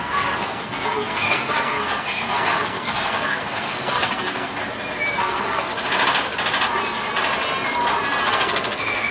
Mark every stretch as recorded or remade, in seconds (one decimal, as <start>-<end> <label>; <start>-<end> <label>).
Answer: 0.0-4.5 remade; 4.5-5.2 recorded; 5.2-5.7 remade; 5.7-8.3 recorded; 8.3-9.1 remade